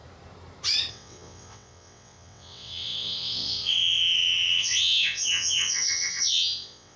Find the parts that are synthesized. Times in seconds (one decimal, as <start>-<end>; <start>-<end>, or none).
0.9-7.0

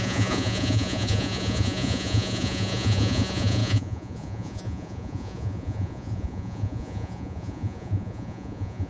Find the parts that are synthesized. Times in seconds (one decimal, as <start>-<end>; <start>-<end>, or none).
0.0-8.9

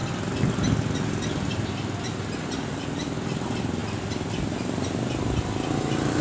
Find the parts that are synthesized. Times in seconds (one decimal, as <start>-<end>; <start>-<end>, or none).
none

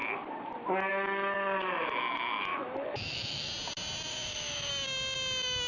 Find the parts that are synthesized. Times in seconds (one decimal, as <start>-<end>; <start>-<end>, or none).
2.5-3.5; 4.1-4.7

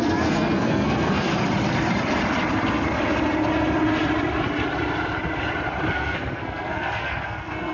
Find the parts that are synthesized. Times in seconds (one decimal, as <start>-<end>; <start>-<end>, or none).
0.0-1.3; 5.9-7.7

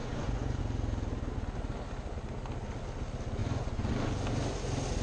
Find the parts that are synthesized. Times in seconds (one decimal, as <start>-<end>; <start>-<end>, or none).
0.0-0.6; 3.4-3.9

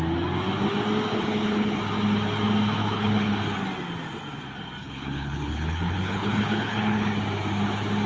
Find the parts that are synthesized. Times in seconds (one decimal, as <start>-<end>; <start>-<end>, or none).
1.1-1.8; 2.8-3.4; 4.8-7.1

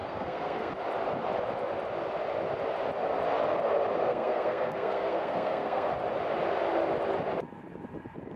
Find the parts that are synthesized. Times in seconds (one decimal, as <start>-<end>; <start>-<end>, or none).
0.0-0.7; 4.0-5.9